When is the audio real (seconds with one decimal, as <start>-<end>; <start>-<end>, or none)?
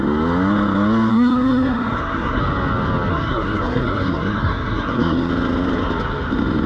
0.0-1.1; 2.4-3.1; 5.3-6.7